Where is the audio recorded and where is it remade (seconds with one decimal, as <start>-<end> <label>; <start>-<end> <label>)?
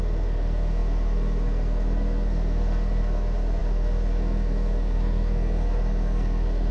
0.0-6.7 remade